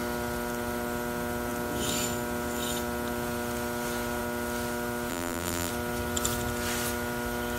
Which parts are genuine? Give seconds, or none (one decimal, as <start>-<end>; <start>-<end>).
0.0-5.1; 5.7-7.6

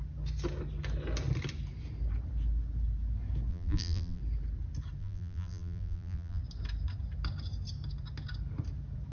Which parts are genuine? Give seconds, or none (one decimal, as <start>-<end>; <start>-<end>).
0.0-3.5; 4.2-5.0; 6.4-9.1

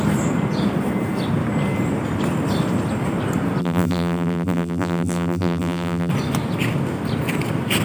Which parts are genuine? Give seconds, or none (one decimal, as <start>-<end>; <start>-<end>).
0.0-3.6; 6.1-7.8

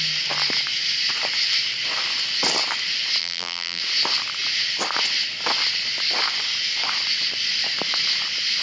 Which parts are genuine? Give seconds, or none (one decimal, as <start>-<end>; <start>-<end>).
0.0-3.2; 3.8-8.6

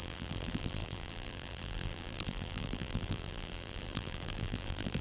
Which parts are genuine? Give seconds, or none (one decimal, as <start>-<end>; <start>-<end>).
none